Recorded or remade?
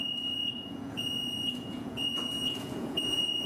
remade